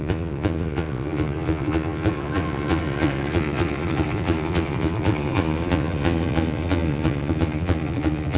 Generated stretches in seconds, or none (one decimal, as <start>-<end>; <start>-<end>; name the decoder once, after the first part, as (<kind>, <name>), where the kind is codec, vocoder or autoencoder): 0.0-8.4 (vocoder, Vocos)